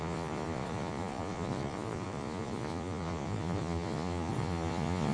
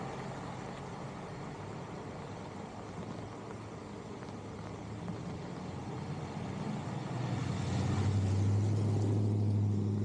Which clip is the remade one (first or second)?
first